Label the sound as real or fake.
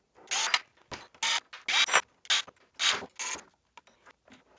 real